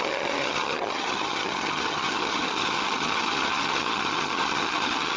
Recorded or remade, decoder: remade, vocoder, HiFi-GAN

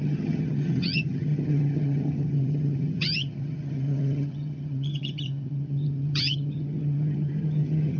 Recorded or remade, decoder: remade, vocoder, HiFi-GAN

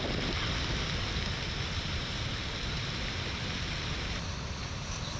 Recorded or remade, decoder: recorded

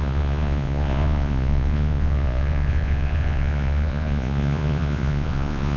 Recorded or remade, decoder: remade, vocoder, Vocos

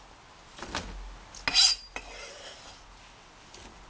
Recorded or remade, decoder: recorded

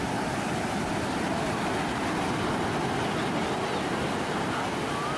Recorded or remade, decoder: recorded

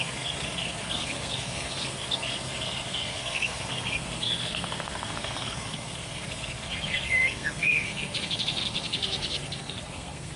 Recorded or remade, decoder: remade, codec, SNAC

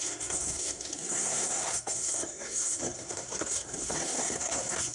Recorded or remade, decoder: remade, codec, SNAC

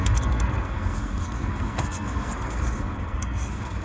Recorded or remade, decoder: remade, codec, SNAC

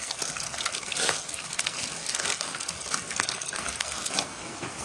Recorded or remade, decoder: remade, codec, SNAC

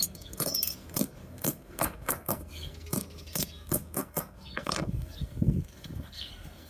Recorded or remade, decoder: remade, codec, SNAC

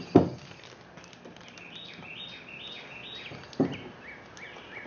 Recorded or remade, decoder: recorded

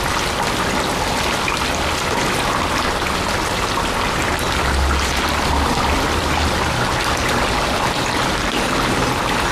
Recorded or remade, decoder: recorded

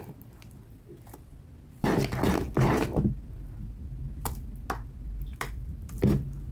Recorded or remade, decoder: recorded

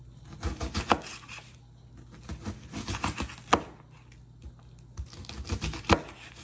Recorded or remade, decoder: recorded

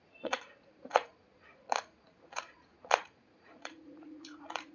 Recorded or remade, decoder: remade, vocoder, Vocos